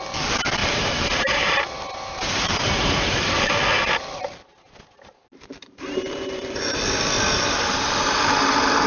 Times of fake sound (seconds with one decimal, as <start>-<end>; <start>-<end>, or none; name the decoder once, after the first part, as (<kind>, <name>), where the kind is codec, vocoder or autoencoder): 0.6-3.5 (vocoder, BigVGAN v2); 5.2-6.8